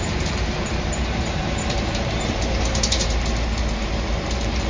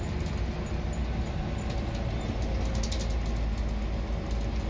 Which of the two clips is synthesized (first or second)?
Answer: first